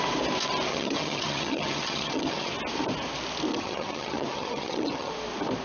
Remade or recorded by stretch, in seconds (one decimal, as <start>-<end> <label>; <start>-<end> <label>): 0.0-0.7 recorded; 0.7-2.5 remade; 2.5-3.5 recorded; 3.5-5.1 remade; 5.1-5.6 recorded